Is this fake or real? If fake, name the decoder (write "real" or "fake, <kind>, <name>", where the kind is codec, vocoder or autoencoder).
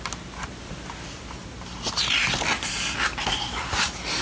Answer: real